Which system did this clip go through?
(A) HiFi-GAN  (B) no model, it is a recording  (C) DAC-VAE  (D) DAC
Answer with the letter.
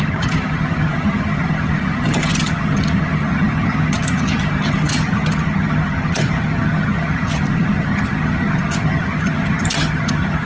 A